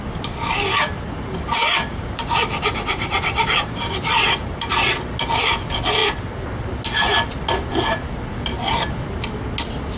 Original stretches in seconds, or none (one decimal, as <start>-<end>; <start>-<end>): 0.0-1.8; 4.7-10.0